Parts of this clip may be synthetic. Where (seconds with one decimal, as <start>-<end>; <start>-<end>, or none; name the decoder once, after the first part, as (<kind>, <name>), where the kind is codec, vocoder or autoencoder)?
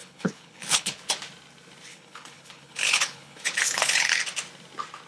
0.0-1.1 (codec, HILCodec); 1.9-4.2